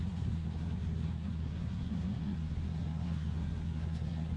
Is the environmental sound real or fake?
fake